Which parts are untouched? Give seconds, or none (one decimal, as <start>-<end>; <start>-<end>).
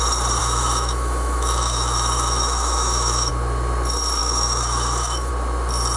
0.0-0.4; 3.3-4.2; 5.3-6.0